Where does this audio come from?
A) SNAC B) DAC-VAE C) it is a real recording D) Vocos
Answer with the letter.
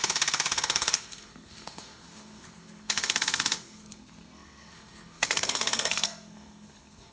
A